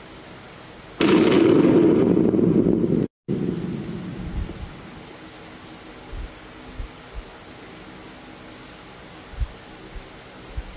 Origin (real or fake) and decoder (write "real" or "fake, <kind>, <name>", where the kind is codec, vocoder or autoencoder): real